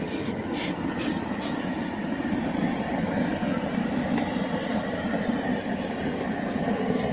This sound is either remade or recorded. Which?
recorded